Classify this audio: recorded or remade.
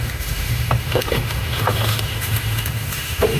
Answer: remade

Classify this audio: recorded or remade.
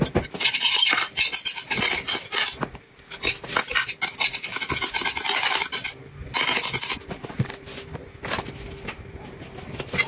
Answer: recorded